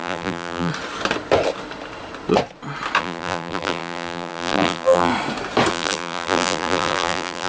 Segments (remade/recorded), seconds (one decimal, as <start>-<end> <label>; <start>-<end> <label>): 0.0-0.7 remade; 0.7-3.0 recorded; 3.0-5.1 remade; 5.1-5.7 recorded; 5.7-7.5 remade